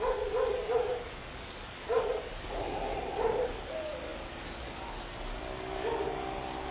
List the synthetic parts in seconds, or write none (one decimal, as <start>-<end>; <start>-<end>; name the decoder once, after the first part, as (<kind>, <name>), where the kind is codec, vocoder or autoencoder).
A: 0.0-6.7 (codec, DAC)